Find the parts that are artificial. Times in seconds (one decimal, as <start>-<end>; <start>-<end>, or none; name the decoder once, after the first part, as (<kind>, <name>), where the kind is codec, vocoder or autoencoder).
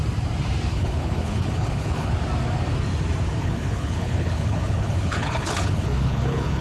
0.7-2.1 (codec, HILCodec); 3.4-6.6